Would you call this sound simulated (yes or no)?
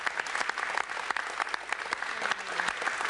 no